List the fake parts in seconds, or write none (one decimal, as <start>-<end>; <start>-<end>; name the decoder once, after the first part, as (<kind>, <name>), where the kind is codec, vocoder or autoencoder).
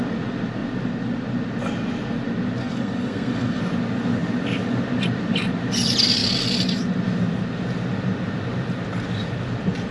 2.6-3.6 (codec, SNAC)